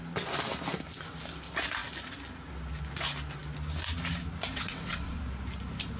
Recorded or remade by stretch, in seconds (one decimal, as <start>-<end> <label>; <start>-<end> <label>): 0.0-4.5 recorded; 4.5-5.2 remade; 5.2-6.0 recorded